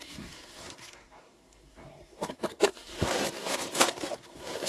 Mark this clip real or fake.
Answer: fake